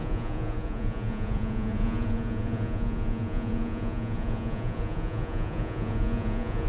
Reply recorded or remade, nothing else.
remade